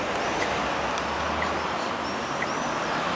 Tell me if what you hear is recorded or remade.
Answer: recorded